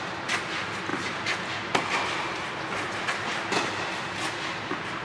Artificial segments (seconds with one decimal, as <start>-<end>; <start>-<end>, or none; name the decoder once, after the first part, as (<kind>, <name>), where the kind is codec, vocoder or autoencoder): none